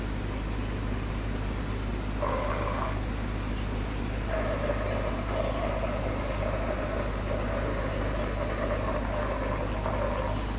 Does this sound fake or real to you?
real